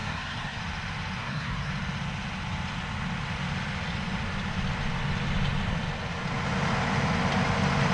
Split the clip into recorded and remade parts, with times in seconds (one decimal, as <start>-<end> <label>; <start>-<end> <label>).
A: 0.0-0.6 remade; 0.6-1.2 recorded; 1.2-1.7 remade; 1.7-7.9 recorded